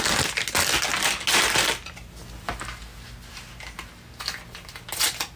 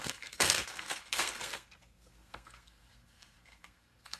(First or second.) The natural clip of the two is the first